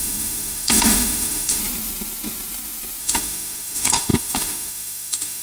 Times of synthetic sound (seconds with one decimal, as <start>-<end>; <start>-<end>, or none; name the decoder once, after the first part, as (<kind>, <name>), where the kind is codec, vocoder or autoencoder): 0.0-1.6 (autoencoder, DAC-VAE); 3.0-5.4

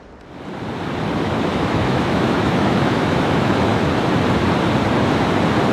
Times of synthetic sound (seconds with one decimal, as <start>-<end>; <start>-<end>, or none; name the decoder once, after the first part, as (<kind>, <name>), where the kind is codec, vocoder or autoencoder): 1.5-3.9 (autoencoder, DAC-VAE)

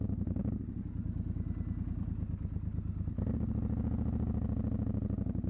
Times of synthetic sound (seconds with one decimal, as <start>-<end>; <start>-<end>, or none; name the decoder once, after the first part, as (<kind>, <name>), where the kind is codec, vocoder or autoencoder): none

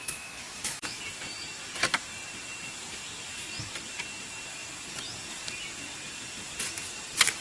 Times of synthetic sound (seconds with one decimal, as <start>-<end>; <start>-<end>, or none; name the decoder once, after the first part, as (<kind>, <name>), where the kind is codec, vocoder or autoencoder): 0.0-1.0 (autoencoder, DAC-VAE)